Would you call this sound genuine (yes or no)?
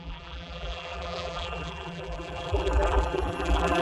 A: no